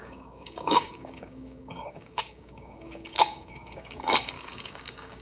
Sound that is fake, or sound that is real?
fake